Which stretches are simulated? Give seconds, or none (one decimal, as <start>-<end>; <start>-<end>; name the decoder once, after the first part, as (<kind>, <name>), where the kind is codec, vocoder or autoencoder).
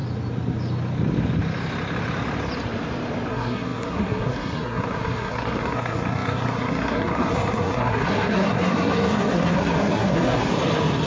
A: 3.3-10.5 (codec, SNAC)